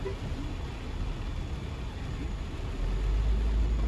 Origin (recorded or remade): recorded